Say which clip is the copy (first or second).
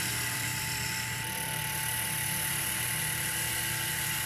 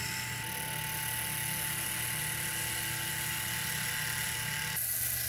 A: first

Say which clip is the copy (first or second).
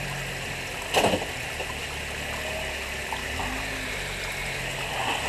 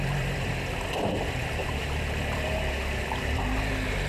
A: second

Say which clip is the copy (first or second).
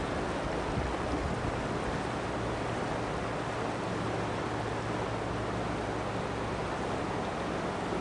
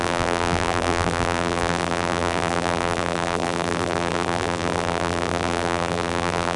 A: second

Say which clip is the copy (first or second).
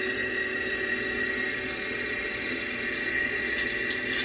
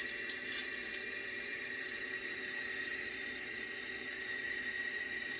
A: second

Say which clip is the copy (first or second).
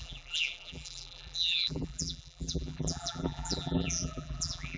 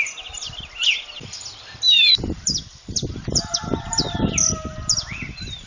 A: first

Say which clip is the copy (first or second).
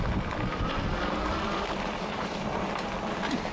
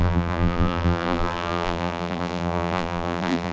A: second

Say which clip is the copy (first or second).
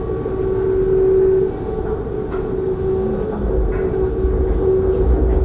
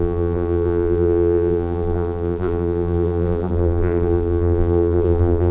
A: second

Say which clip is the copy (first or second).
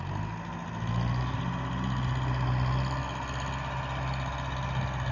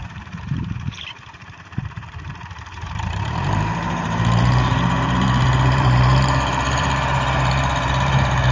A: second